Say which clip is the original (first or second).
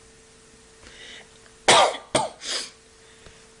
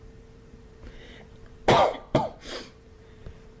first